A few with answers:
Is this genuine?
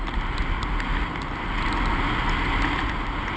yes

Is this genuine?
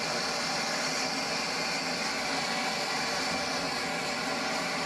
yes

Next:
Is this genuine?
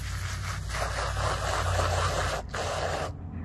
yes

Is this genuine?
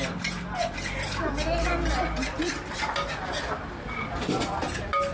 yes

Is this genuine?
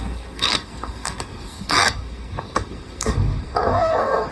no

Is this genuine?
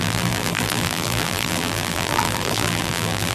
no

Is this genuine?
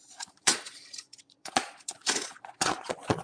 no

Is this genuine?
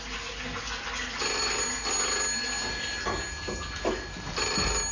yes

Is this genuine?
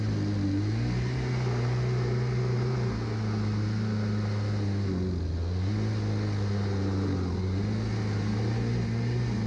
yes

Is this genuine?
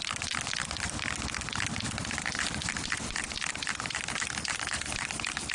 yes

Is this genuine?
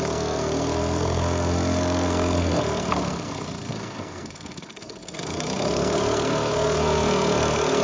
no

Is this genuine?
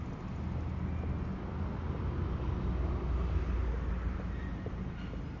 yes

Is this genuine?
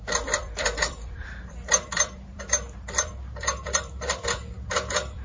no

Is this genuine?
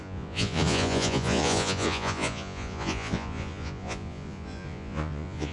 no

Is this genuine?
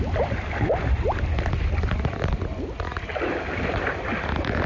yes